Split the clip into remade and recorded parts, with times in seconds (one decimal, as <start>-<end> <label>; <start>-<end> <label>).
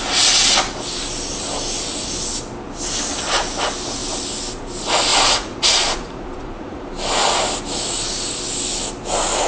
0.0-5.1 recorded; 5.1-6.8 remade; 6.8-9.5 recorded